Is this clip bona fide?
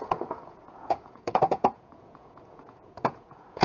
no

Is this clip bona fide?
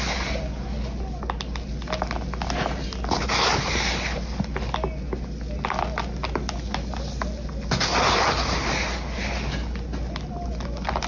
yes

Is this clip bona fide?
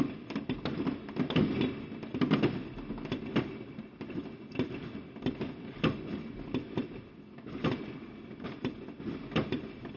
yes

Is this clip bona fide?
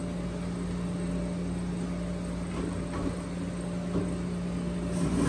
yes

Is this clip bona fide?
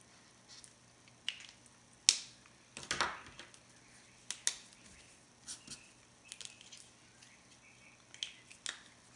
yes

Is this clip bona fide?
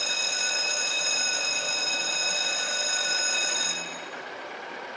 yes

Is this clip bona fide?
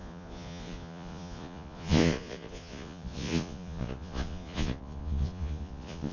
no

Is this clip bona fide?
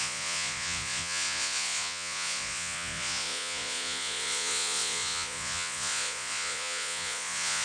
no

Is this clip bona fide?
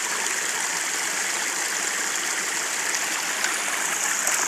yes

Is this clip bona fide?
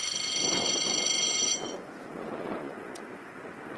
no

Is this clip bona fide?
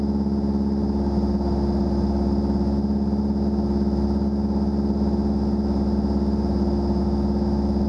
yes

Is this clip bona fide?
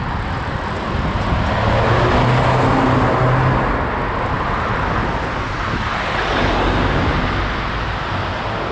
yes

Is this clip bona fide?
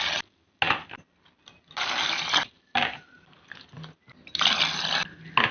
yes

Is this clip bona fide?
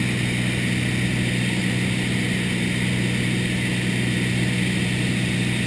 yes